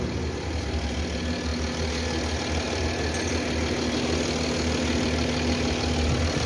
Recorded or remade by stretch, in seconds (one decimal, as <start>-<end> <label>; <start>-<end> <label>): 0.0-6.5 recorded